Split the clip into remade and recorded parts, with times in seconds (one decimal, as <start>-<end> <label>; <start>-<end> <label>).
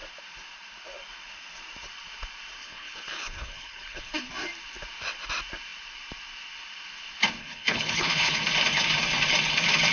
0.0-2.6 recorded; 2.6-4.3 remade; 4.3-7.4 recorded; 7.4-8.4 remade; 8.4-9.9 recorded